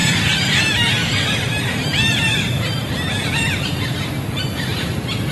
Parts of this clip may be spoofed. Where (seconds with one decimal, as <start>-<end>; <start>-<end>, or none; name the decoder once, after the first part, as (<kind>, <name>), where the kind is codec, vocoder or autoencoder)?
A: 0.0-0.6 (vocoder, BigVGAN v2); 1.0-4.1